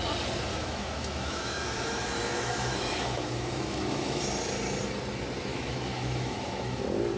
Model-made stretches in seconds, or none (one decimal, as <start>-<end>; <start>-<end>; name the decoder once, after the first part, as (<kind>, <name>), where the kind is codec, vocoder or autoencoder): 0.5-4.2 (autoencoder, DAC-VAE); 5.5-6.8